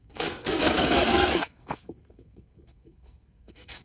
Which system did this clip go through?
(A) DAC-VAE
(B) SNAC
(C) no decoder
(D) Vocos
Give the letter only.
B